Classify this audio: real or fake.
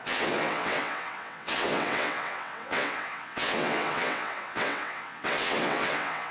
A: fake